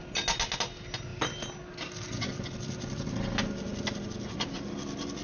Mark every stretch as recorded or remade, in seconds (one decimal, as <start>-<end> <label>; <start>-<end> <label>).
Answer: 0.0-5.2 recorded